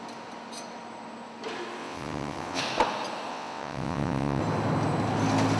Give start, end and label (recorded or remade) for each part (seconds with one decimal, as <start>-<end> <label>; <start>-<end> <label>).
0.0-1.8 recorded; 1.8-2.6 remade; 2.6-3.3 recorded; 3.3-4.4 remade; 4.4-5.6 recorded